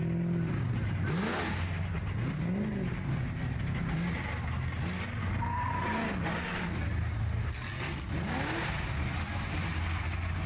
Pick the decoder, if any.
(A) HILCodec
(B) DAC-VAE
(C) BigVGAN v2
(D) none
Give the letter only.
D